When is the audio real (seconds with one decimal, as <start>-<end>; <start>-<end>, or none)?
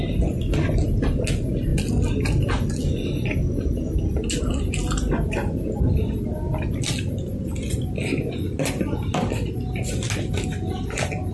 0.0-11.3